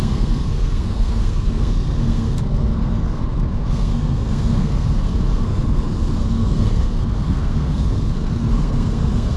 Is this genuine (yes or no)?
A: no